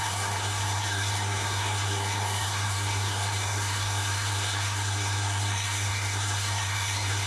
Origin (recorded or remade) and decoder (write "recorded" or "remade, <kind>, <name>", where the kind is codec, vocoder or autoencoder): remade, codec, SNAC